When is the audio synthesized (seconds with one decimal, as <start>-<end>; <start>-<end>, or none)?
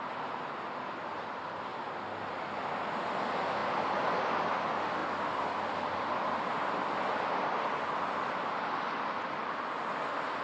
none